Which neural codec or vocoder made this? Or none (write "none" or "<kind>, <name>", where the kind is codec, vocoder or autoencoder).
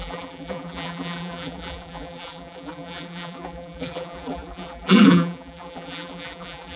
vocoder, BigVGAN v2